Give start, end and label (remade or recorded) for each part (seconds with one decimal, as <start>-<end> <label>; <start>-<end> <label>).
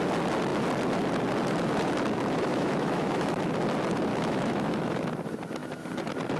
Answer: 0.0-2.5 recorded; 2.5-3.3 remade; 3.3-4.1 recorded; 4.1-5.1 remade; 5.1-6.4 recorded